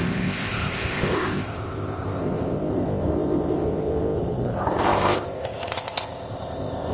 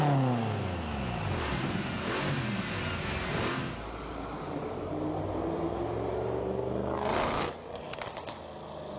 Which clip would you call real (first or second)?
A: second